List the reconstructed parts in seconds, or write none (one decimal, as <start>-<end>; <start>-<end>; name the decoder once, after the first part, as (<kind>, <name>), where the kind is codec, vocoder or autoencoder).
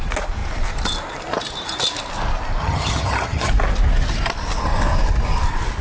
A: 2.6-3.5 (vocoder, HiFi-GAN)